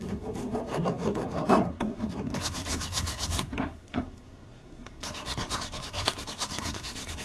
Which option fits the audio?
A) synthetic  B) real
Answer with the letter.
A